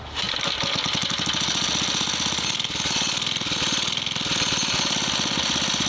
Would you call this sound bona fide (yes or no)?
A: yes